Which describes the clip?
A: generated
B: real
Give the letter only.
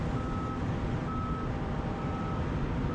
B